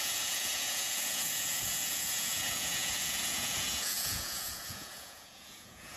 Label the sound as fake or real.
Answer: fake